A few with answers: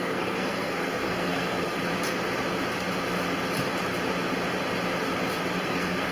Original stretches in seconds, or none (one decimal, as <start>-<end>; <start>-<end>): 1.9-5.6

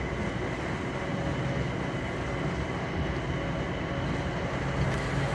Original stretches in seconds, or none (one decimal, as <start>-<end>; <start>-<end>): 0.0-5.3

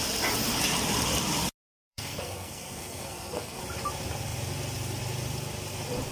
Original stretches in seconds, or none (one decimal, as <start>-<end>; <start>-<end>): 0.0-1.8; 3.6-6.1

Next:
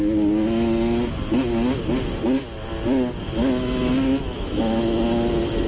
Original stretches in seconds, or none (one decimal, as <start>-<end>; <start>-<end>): 0.0-3.4; 5.0-5.7

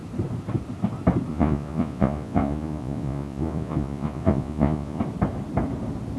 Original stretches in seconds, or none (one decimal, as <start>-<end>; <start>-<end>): 0.0-1.3; 5.0-6.2

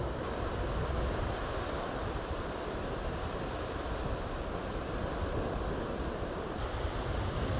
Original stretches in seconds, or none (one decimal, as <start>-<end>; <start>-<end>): none

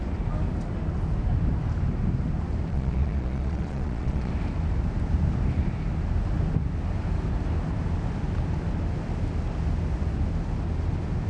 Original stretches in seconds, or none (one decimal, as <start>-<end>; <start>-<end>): 0.0-2.7; 4.3-11.3

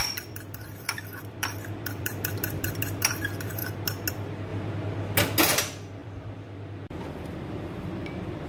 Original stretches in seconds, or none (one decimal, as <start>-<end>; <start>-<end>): 3.6-4.1; 4.5-5.4